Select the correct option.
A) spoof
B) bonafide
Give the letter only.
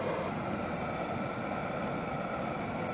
B